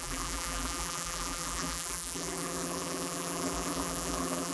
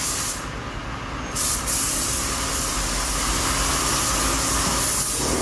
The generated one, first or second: first